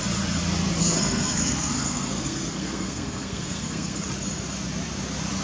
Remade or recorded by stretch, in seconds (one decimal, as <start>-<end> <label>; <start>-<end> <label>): 0.0-0.8 recorded; 0.8-4.0 remade; 4.0-5.4 recorded